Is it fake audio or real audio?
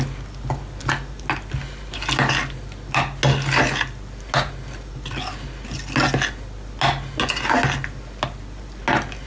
real